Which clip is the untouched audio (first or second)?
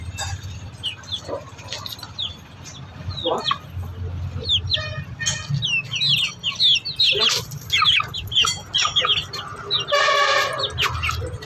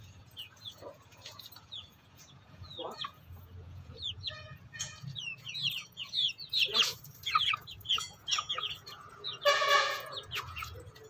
first